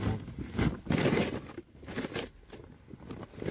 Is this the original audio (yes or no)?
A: yes